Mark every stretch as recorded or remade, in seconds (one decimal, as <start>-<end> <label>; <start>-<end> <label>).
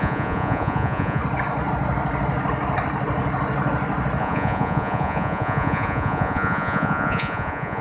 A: 0.0-1.2 remade; 1.2-4.2 recorded; 4.2-7.8 remade